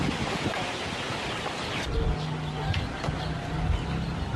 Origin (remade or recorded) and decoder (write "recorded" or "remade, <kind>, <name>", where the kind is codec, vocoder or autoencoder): recorded